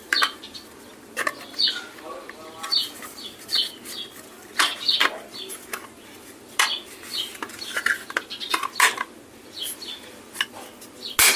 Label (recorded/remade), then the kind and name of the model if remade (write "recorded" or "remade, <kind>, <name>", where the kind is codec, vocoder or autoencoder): recorded